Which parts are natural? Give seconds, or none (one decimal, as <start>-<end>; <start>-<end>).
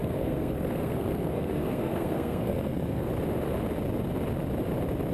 3.1-5.1